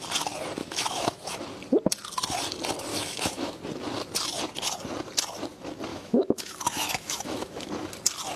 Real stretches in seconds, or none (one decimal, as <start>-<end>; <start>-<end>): 0.0-0.6; 1.4-2.9; 3.6-5.9; 7.7-8.4